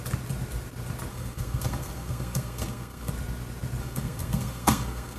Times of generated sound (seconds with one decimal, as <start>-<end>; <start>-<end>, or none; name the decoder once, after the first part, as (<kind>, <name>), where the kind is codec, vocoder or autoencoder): 1.1-3.1 (codec, SNAC); 3.8-5.2